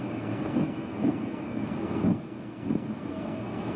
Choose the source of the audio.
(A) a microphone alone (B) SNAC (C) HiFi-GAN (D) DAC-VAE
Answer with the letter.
B